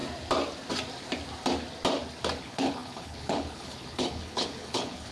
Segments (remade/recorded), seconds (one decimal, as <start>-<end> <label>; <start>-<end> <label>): 0.0-2.4 recorded; 2.4-5.1 remade